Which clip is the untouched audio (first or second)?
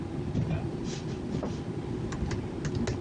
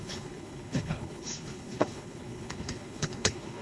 first